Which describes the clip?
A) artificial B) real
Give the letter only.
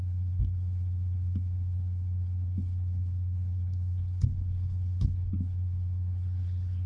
A